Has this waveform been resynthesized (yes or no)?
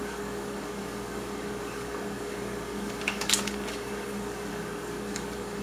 yes